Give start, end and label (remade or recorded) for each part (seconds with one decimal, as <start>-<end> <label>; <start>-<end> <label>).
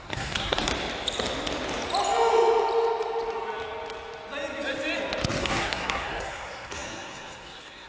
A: 0.0-0.7 remade; 0.7-5.4 recorded; 5.4-7.9 remade